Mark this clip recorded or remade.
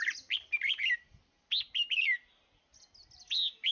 recorded